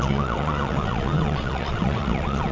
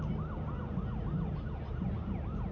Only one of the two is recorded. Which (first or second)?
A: second